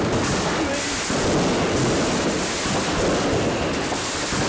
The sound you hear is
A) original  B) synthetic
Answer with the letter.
A